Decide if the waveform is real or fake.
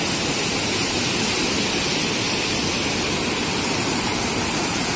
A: real